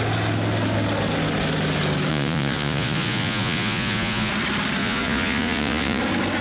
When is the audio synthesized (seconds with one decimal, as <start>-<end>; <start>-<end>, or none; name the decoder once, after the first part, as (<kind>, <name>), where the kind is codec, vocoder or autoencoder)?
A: 2.1-4.3 (vocoder, Vocos); 4.8-6.0